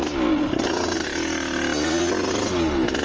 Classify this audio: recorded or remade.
recorded